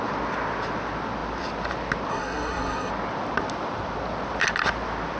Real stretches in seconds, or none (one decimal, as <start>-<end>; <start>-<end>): 0.0-2.1; 2.9-5.2